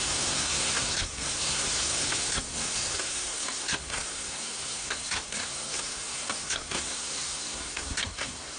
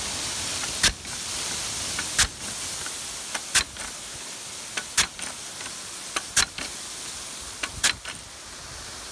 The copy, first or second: first